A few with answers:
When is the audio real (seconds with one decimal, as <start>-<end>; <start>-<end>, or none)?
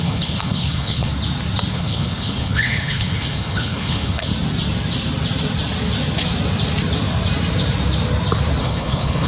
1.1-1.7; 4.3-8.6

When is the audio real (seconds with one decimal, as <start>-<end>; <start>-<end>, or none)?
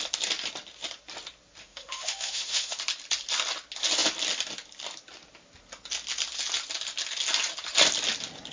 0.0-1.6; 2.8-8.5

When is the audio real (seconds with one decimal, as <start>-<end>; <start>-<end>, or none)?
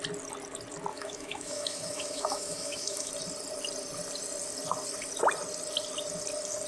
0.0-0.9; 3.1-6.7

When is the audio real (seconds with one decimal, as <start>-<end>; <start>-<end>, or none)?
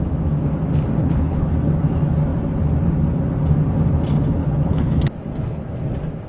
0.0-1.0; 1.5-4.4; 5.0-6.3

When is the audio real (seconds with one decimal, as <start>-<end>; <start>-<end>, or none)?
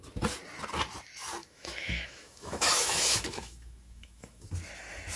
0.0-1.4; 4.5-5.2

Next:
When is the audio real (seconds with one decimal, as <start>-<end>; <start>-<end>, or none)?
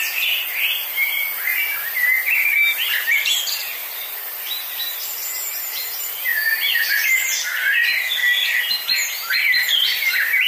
1.5-2.9; 3.8-4.4; 6.3-7.1; 7.8-8.6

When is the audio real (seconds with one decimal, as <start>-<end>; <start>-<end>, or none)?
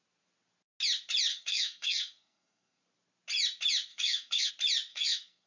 0.0-1.3; 2.8-3.9; 4.5-4.9